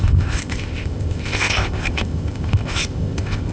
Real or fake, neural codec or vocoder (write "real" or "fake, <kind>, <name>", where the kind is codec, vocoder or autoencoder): fake, codec, ZipCodec